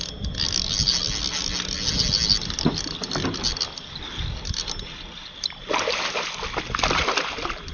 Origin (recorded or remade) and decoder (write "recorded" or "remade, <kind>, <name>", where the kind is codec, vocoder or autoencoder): recorded